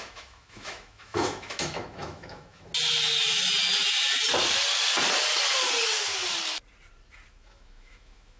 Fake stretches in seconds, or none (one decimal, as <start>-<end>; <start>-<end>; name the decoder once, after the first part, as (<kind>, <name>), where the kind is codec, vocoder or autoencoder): 0.0-2.7 (autoencoder, DAC-VAE); 7.3-8.4